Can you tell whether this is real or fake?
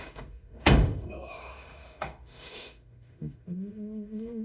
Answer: fake